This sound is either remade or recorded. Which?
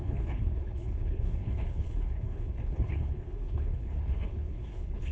remade